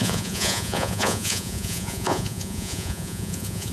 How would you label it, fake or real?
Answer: fake